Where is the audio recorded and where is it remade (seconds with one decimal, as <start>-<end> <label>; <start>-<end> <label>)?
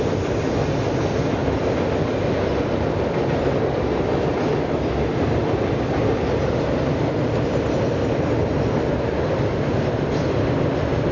0.0-9.7 recorded; 9.7-10.7 remade; 10.7-11.1 recorded